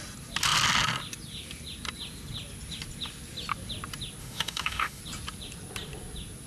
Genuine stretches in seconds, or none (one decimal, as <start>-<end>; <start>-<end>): 0.0-4.2; 5.0-6.5